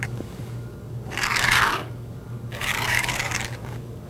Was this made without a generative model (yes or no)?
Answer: no